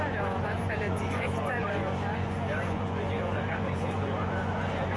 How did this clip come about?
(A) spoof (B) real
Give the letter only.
A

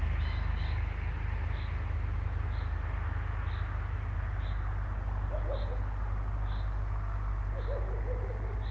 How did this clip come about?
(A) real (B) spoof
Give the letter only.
A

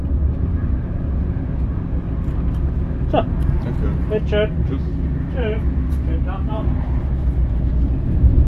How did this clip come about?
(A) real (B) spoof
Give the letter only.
A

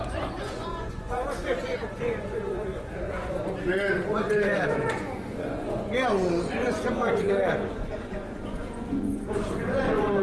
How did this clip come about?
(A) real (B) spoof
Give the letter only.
B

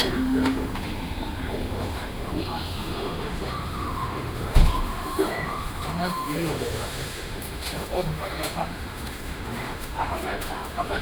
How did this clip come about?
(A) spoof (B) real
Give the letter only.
A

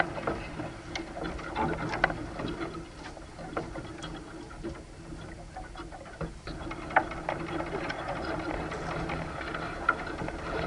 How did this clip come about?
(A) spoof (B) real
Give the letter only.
B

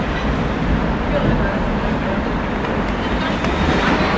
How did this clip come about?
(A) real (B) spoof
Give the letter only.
A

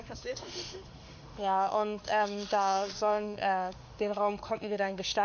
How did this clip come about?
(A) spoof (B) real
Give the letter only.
A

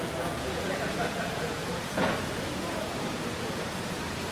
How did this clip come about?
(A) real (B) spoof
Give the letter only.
B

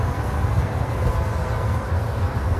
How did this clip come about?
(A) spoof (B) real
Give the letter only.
A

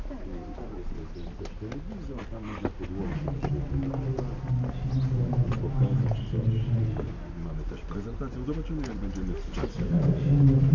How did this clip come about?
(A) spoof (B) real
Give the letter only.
B